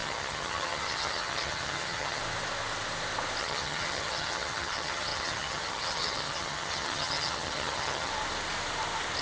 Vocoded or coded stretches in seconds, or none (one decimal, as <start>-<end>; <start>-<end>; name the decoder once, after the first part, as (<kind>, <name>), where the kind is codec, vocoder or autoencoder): 0.0-2.2 (vocoder, HiFi-GAN); 3.4-8.1